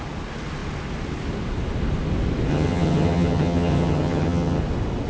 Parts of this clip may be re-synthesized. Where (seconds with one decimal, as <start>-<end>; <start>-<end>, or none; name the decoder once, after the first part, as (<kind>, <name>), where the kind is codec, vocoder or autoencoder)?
2.5-4.6 (vocoder, HiFi-GAN)